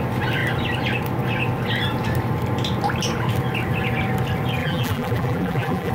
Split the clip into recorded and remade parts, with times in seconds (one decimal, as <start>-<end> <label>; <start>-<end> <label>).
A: 0.0-4.6 recorded; 4.6-5.9 remade